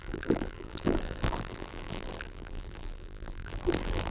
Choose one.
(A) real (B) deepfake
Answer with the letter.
B